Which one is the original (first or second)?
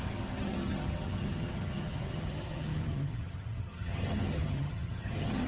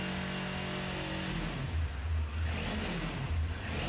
second